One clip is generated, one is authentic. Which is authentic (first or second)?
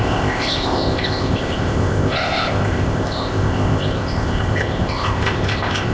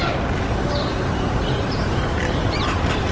second